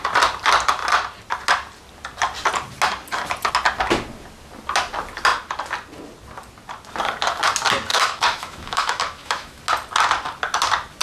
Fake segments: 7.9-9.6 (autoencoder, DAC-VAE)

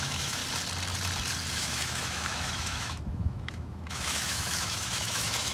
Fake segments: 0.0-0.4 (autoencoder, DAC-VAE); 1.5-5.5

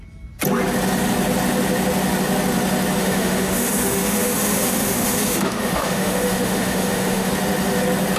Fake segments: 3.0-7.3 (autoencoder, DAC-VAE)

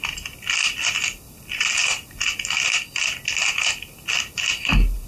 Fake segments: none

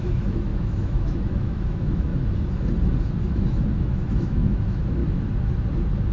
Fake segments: 0.0-2.1 (autoencoder, DAC-VAE); 3.0-5.0

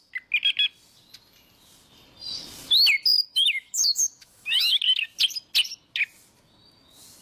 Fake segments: 3.3-4.8 (autoencoder, DAC-VAE)

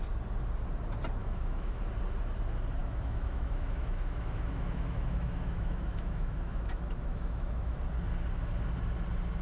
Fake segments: 1.2-1.8 (autoencoder, DAC-VAE); 2.8-7.8

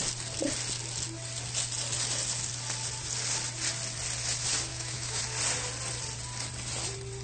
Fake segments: 4.7-5.2 (autoencoder, DAC-VAE)